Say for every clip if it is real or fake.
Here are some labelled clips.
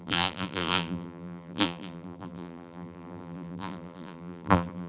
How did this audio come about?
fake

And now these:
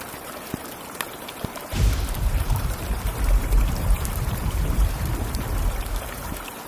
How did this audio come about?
fake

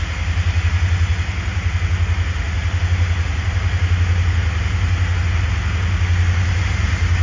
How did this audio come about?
real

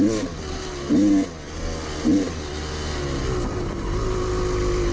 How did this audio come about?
real